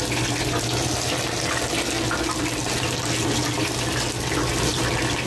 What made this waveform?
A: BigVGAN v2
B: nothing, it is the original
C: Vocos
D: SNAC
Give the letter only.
B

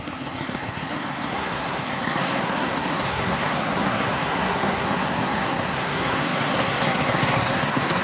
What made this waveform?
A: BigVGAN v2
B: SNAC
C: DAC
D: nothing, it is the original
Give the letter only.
B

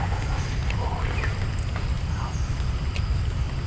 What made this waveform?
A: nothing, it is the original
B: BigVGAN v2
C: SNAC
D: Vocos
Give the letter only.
A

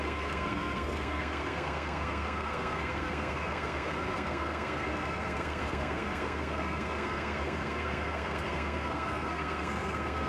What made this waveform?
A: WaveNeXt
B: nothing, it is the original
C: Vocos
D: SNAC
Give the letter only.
D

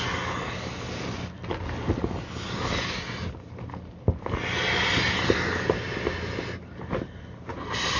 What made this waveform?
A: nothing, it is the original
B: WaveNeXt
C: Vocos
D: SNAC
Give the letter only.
A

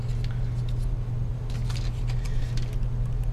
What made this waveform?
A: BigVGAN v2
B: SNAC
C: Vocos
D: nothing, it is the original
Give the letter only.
D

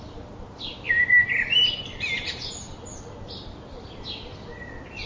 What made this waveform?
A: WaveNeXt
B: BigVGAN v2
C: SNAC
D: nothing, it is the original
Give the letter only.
D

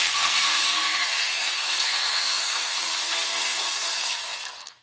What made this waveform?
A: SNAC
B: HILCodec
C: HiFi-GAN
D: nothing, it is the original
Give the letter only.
A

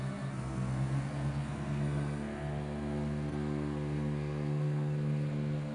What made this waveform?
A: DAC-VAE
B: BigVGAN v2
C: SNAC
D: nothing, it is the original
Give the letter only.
C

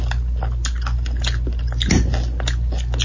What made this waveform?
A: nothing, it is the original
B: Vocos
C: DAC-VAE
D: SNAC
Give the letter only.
A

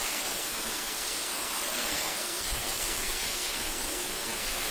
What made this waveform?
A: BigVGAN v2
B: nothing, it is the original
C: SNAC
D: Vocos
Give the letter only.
C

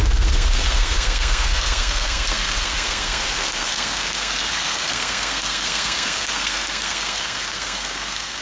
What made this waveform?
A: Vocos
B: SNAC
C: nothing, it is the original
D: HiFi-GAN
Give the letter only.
B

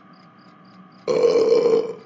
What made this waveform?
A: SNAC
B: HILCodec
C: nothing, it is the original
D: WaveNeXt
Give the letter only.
C